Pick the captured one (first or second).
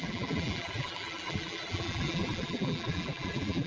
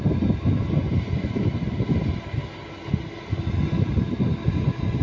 second